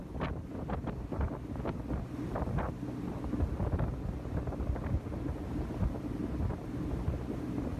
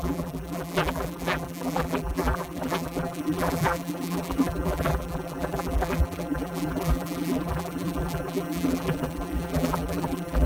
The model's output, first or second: second